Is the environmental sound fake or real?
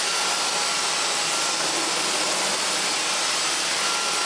real